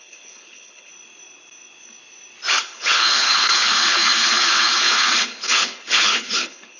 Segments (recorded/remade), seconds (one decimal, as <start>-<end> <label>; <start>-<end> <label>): 0.0-0.9 remade; 0.9-2.6 recorded; 2.6-6.8 remade